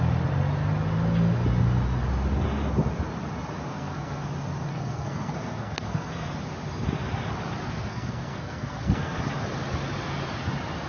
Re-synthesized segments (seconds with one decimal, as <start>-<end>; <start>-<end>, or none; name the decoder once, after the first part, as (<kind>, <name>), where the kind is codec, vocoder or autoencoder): 3.7-4.3 (codec, SNAC); 4.7-6.1; 7.9-9.2